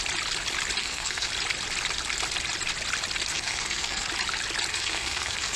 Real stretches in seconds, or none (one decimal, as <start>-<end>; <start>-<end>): 0.0-0.8; 1.3-3.3; 4.1-4.7